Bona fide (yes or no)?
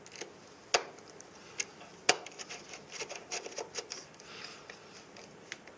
yes